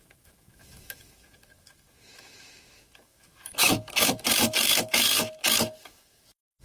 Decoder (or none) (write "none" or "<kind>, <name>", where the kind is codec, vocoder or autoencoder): autoencoder, DAC-VAE